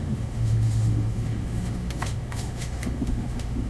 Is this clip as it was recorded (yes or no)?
no